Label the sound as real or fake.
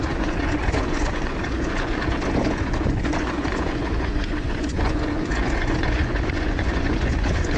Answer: fake